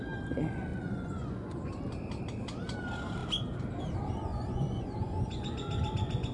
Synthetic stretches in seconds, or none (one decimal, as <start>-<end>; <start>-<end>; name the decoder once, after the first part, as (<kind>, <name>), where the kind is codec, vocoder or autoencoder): 0.7-1.7 (vocoder, Vocos); 4.3-6.3